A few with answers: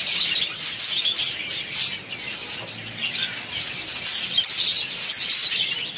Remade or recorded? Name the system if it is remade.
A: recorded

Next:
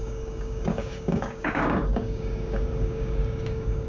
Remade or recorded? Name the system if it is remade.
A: remade, codec, DAC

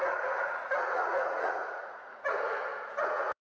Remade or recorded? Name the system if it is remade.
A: remade, vocoder, Vocos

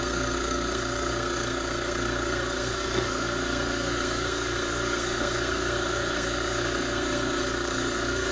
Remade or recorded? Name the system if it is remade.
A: remade, codec, SNAC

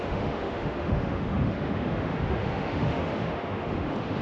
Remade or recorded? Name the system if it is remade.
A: remade, autoencoder, DAC-VAE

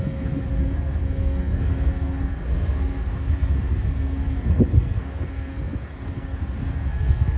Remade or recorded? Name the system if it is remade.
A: remade, codec, SNAC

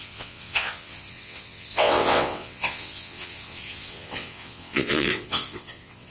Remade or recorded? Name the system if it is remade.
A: remade, vocoder, WaveNeXt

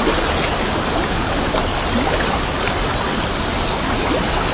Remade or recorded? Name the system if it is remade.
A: recorded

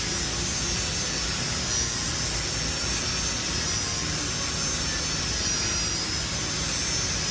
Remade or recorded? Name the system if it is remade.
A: recorded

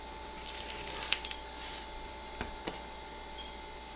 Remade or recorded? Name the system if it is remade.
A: recorded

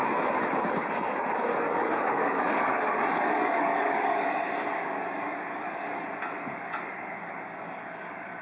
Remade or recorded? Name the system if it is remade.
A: remade, codec, DAC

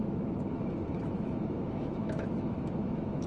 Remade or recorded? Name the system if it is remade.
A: remade, autoencoder, DAC-VAE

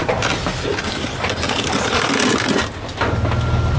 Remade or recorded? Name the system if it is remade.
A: recorded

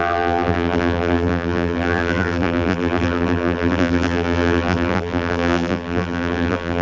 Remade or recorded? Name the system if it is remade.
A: remade, vocoder, BigVGAN v2